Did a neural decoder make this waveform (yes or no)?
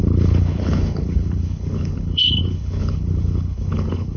yes